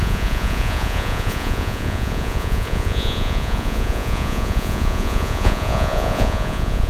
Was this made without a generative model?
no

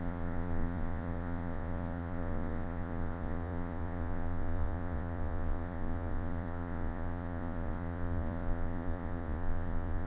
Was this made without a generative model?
no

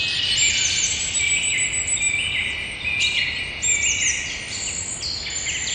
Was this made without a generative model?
yes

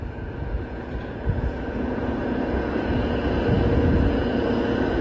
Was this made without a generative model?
no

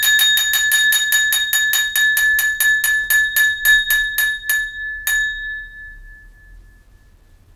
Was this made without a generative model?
yes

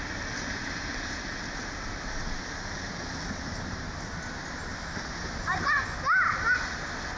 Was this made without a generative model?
yes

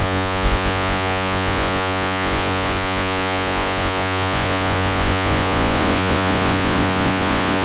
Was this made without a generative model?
no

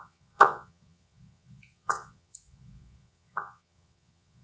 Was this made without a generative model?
no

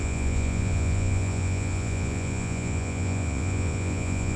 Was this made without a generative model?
no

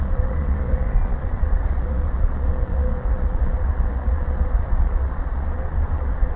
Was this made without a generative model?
no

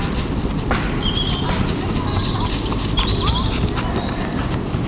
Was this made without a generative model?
yes